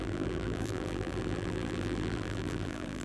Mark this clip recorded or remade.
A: remade